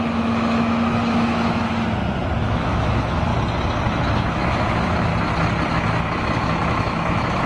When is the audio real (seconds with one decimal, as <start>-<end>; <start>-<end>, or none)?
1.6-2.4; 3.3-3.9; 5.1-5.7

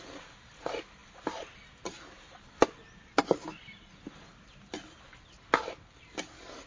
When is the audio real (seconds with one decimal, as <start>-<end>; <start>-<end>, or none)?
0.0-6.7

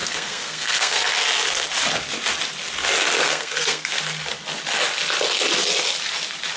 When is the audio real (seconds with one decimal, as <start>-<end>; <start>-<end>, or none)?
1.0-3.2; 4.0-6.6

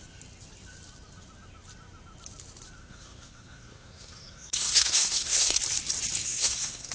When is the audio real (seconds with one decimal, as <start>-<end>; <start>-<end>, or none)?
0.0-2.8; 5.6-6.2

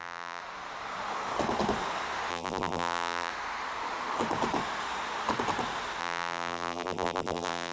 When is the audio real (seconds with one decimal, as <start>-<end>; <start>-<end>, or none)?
0.4-2.3; 3.3-6.0